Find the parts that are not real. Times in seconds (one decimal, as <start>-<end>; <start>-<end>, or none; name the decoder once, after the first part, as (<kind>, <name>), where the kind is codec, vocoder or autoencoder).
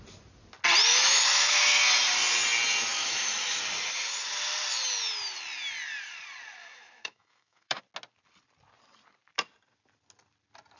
0.9-1.8 (autoencoder, DAC-VAE); 2.9-3.6; 6.6-7.8